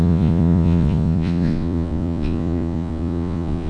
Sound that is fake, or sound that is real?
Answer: fake